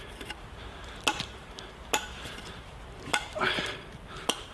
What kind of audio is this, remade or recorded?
recorded